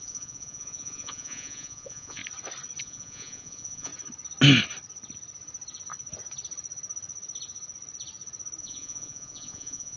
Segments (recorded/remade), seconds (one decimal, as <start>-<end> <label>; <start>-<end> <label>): 0.0-2.2 remade; 2.2-2.8 recorded; 2.8-3.9 remade; 3.9-8.6 recorded; 8.6-10.0 remade